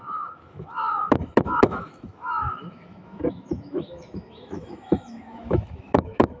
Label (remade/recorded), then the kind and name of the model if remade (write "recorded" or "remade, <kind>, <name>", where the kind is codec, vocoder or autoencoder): remade, autoencoder, DAC-VAE